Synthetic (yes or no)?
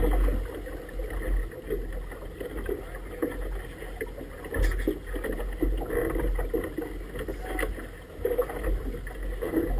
no